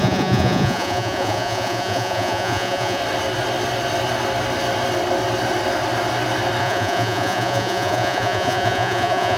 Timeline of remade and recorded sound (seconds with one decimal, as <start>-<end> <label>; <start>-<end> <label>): 0.0-3.0 remade; 3.0-6.6 recorded; 6.6-9.4 remade